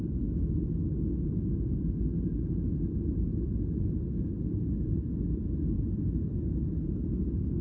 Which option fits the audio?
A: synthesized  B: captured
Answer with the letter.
B